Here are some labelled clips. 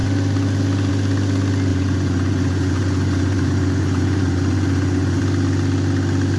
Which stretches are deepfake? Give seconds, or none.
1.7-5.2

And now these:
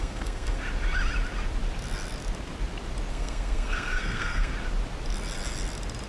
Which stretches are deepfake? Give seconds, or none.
0.0-0.6; 3.1-4.5